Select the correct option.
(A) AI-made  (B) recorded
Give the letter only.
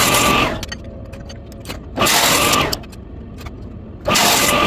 B